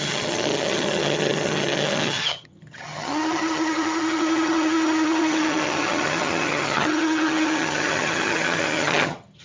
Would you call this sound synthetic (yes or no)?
yes